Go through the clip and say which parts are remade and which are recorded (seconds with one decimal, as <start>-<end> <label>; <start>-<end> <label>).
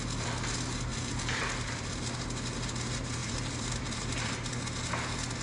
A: 0.0-0.9 recorded; 0.9-2.0 remade; 2.0-3.2 recorded; 3.2-4.5 remade; 4.5-5.4 recorded